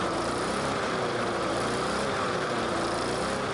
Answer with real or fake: fake